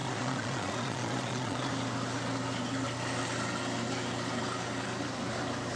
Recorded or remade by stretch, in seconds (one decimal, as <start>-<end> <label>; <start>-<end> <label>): 0.0-1.7 remade; 1.7-5.8 recorded